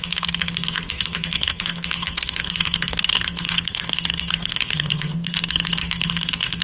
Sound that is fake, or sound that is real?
fake